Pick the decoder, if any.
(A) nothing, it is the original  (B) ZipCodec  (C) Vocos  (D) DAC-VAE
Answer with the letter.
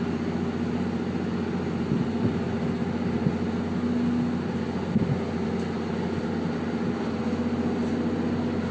A